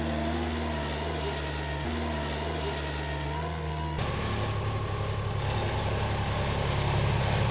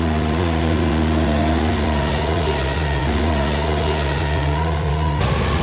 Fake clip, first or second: second